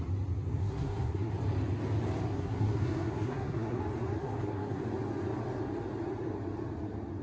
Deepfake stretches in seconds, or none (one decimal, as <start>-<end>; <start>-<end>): 0.6-1.3; 2.3-3.8; 4.2-4.8